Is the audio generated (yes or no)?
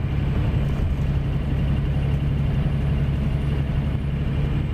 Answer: no